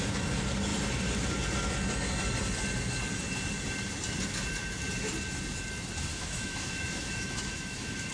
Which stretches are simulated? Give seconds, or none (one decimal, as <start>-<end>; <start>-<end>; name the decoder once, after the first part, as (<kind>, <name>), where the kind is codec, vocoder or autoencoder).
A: 6.1-8.1 (autoencoder, DAC-VAE)